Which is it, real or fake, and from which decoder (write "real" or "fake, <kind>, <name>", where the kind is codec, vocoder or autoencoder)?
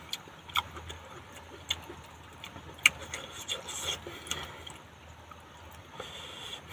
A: real